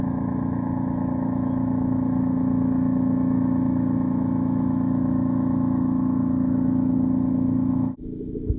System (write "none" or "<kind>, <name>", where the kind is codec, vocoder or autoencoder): autoencoder, DAC-VAE